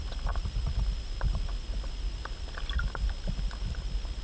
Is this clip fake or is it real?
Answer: real